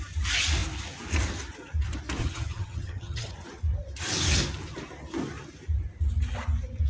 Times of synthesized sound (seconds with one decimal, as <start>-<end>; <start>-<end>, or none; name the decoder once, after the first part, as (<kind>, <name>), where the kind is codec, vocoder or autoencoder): 2.2-3.3 (vocoder, HiFi-GAN)